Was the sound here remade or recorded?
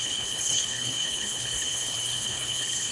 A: remade